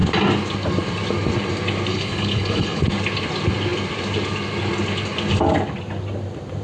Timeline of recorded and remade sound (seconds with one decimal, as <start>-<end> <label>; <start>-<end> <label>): 0.0-1.9 recorded; 1.9-2.8 remade; 2.8-6.6 recorded